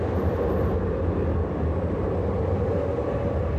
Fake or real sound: real